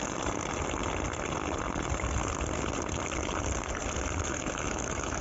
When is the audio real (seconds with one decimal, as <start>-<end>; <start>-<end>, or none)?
0.0-4.3